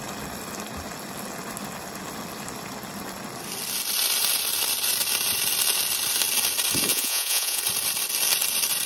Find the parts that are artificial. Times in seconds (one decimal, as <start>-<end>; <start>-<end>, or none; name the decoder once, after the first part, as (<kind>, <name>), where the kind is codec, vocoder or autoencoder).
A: 6.9-7.6 (vocoder, Vocos)

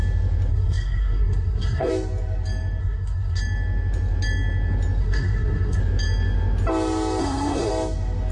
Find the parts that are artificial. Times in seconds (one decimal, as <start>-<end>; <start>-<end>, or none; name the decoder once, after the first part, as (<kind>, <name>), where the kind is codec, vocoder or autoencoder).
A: 0.5-1.9 (codec, SNAC); 2.8-3.4; 5.0-5.8; 7.2-7.7

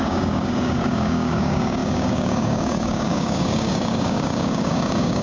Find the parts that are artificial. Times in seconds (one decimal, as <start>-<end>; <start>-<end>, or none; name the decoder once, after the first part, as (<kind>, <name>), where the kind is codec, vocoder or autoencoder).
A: 0.0-5.2 (codec, DAC)

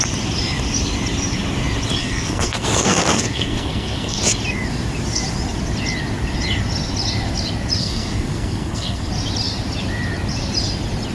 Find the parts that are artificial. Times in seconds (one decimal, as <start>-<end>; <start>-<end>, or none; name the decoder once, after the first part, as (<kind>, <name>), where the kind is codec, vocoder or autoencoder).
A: 2.0-4.2 (codec, SNAC); 7.8-9.1

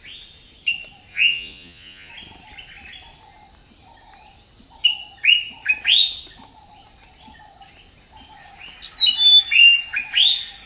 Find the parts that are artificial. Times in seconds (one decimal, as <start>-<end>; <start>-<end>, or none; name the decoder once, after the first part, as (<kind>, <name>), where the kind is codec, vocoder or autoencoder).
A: 1.1-2.1 (vocoder, Vocos)